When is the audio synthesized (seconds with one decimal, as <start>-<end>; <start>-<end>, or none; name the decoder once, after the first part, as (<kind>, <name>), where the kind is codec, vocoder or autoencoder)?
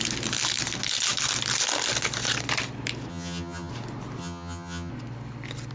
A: 3.1-3.7 (vocoder, HiFi-GAN); 4.2-4.9